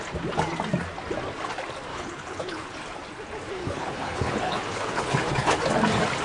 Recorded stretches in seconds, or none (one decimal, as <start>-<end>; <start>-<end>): 0.0-1.9; 2.8-3.6; 5.6-6.2